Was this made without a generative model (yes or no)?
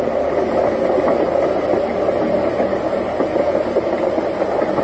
yes